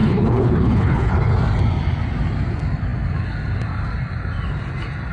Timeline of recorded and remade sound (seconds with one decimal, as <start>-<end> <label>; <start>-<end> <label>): 0.0-1.1 remade; 1.1-5.1 recorded

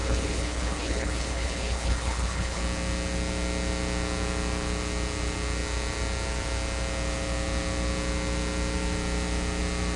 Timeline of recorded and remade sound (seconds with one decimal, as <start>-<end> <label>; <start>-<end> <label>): 0.0-2.6 remade; 2.6-10.0 recorded

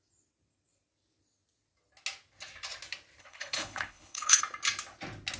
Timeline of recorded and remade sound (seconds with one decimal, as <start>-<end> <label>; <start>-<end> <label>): 0.0-3.2 recorded; 3.2-4.4 remade; 4.4-5.4 recorded

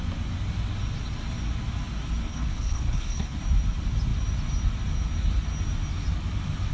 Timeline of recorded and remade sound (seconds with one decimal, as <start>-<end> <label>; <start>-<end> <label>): 0.0-2.3 recorded; 2.3-3.4 remade; 3.4-6.7 recorded

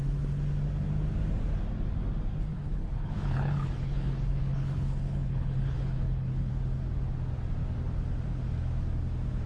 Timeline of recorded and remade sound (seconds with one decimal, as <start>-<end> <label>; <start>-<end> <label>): 0.0-2.5 recorded; 2.5-6.5 remade; 6.5-9.5 recorded

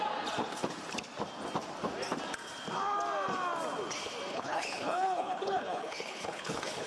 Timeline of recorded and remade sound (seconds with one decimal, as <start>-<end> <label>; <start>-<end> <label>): 0.0-4.3 recorded; 4.3-6.9 remade

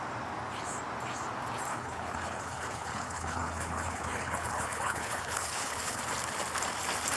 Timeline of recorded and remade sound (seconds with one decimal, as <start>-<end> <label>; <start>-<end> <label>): 0.0-1.7 recorded; 1.7-6.0 remade; 6.0-7.2 recorded

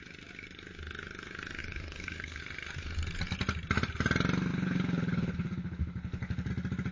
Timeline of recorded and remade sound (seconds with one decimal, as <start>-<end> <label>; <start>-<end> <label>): 0.0-1.6 recorded; 1.6-2.4 remade; 2.4-4.5 recorded; 4.5-6.5 remade; 6.5-6.9 recorded